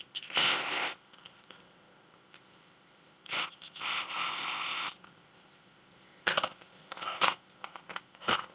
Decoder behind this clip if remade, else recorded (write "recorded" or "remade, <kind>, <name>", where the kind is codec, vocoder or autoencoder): remade, codec, ZipCodec